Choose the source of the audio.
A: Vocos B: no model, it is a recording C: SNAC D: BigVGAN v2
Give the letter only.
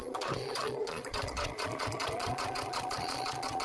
A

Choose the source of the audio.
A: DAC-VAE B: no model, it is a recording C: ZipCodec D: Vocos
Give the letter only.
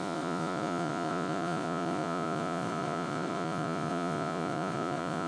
D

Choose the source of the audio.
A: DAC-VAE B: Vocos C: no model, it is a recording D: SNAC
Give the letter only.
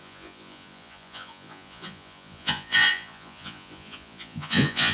B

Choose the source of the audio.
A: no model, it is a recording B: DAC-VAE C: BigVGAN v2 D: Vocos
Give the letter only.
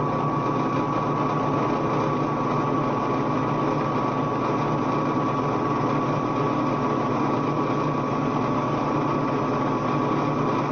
A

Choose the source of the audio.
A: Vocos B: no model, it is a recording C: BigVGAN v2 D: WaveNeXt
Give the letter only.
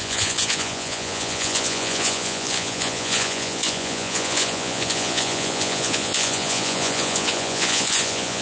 A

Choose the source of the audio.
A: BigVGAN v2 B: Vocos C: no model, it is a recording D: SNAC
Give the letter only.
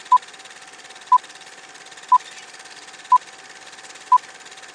C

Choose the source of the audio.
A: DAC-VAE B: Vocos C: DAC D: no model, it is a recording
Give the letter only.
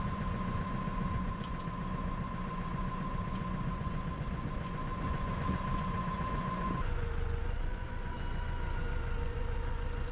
B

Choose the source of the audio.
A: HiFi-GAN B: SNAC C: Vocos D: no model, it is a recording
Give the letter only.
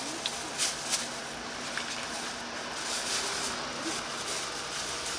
D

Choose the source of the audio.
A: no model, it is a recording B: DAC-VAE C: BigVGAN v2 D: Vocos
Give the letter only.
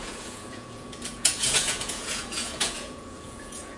D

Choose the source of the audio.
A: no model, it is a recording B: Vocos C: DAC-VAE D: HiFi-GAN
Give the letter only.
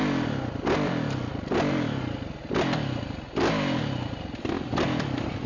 A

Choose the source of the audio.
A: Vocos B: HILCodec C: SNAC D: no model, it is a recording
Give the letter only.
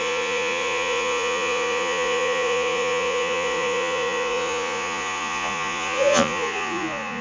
A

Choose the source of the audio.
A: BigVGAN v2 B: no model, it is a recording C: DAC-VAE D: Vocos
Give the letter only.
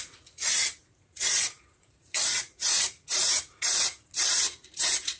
D